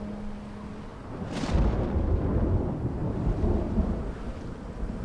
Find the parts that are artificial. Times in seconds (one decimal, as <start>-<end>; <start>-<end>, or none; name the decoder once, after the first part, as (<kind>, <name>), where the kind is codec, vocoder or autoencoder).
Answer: none